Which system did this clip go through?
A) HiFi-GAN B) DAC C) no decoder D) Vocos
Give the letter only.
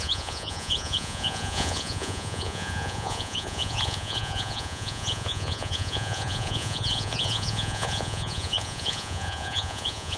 D